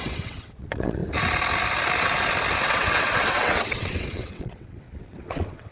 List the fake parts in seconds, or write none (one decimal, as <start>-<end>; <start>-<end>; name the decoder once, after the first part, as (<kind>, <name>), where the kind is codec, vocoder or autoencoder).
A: 0.0-1.0 (vocoder, WaveNeXt); 2.6-5.7